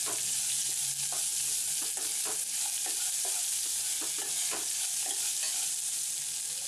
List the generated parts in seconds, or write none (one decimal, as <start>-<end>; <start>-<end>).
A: none